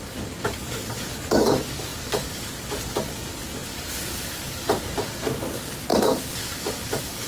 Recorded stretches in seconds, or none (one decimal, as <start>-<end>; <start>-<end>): none